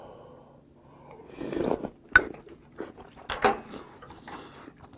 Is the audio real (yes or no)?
yes